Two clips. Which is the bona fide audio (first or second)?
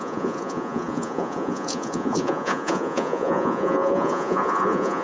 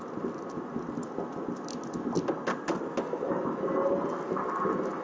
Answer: second